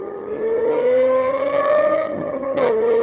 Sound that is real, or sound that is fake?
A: fake